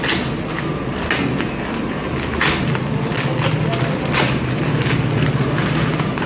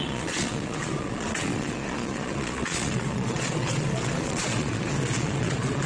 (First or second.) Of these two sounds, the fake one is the second